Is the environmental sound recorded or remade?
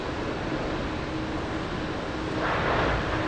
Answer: recorded